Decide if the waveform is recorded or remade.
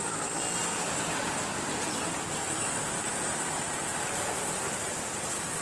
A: recorded